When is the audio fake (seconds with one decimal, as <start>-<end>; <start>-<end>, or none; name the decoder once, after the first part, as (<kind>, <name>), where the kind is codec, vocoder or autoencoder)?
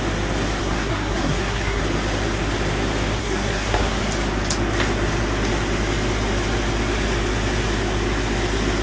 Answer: 0.6-1.8 (codec, SNAC); 3.2-4.0